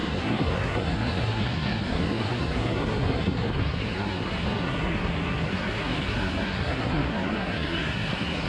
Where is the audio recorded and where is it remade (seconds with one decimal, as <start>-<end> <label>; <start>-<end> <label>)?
0.0-8.5 remade